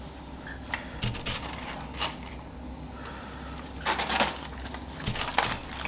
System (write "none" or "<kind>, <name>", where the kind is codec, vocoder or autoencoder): none